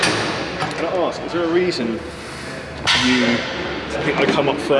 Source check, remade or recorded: recorded